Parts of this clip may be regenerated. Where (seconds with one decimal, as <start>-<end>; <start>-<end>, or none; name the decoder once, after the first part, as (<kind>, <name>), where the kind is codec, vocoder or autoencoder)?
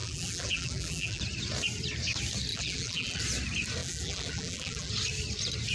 0.0-1.2 (vocoder, BigVGAN v2); 2.5-3.2; 3.8-4.9